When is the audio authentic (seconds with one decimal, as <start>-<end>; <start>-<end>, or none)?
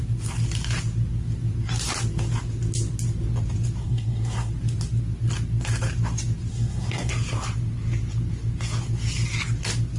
0.0-3.8; 4.5-6.5; 7.1-10.0